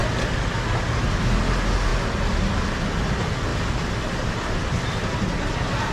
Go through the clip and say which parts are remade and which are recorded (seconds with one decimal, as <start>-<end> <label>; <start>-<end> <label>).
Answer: 0.0-5.9 recorded